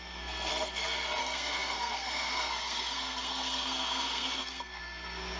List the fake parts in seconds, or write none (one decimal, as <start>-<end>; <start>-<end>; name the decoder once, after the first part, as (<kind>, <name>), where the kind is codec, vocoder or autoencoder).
0.0-0.5 (codec, SNAC); 1.2-5.4

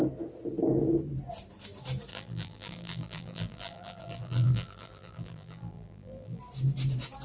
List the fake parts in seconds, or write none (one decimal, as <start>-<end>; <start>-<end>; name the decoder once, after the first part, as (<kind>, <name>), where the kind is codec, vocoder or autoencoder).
2.1-6.4 (vocoder, BigVGAN v2)

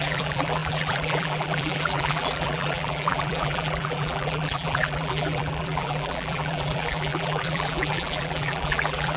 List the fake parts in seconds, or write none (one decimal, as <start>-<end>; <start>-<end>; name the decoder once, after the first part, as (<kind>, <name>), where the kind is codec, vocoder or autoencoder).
0.0-9.2 (vocoder, BigVGAN v2)